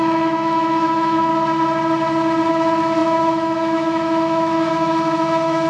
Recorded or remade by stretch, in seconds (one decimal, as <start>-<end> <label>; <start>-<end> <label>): 0.0-1.3 remade; 1.3-2.5 recorded; 2.5-5.7 remade